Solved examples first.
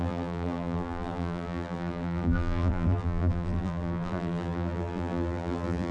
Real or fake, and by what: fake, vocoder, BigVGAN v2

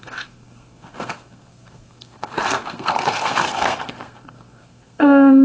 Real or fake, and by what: fake, codec, SNAC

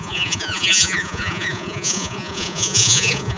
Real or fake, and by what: fake, vocoder, Vocos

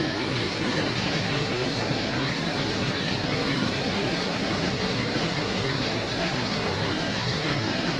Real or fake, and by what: fake, codec, SNAC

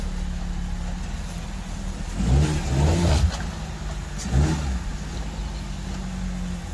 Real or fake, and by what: real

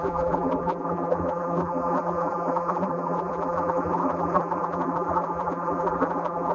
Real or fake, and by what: fake, vocoder, BigVGAN v2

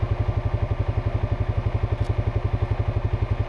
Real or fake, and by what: real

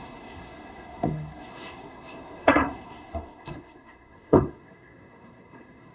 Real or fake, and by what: fake, codec, SNAC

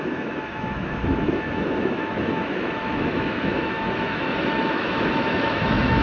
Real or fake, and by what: fake, autoencoder, DAC-VAE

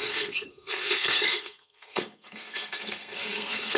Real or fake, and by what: fake, codec, SNAC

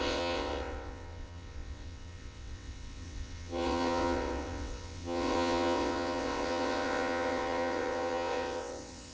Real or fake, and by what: fake, vocoder, WaveNeXt